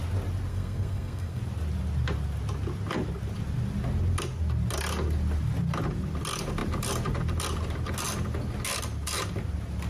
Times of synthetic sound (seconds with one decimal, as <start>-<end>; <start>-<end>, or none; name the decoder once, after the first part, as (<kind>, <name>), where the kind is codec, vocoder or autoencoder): 0.5-1.4 (codec, SNAC)